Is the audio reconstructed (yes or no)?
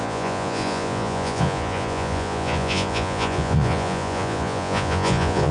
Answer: yes